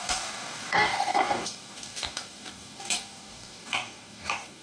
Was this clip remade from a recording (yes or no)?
yes